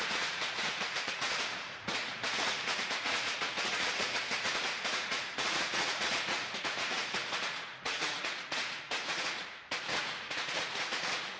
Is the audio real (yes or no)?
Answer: no